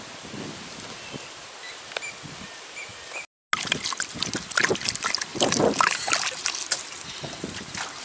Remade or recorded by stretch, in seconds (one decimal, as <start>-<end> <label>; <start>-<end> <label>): 0.0-8.0 recorded